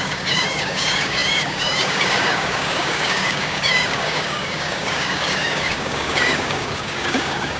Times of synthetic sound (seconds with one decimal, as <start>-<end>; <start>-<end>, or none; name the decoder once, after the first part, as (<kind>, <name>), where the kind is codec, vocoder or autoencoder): 0.0-7.6 (codec, DAC)